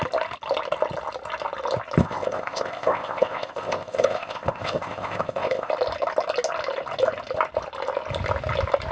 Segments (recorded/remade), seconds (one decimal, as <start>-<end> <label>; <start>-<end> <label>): 0.0-2.0 recorded; 2.0-5.7 remade; 5.7-8.9 recorded